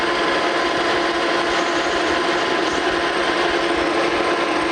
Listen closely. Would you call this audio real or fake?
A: real